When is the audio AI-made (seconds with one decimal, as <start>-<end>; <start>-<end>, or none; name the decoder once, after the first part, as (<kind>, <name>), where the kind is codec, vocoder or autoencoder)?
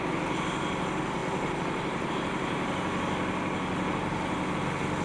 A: 1.2-2.1 (vocoder, BigVGAN v2)